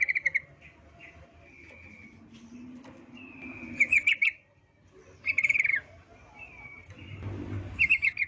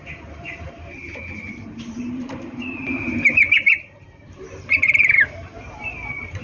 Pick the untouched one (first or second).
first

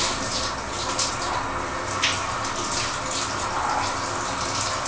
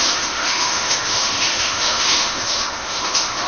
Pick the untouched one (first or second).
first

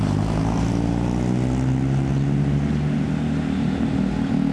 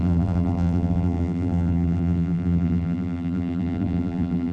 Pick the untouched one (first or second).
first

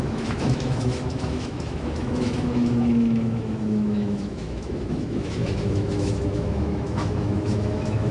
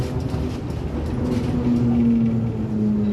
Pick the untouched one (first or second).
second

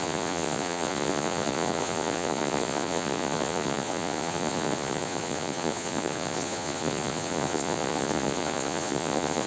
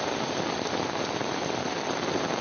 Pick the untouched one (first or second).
second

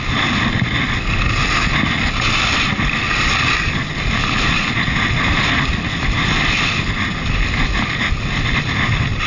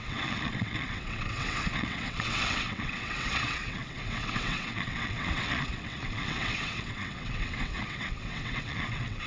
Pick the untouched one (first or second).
first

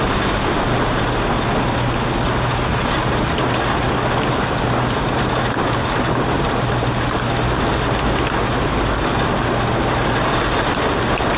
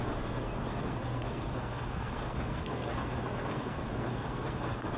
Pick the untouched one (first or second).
first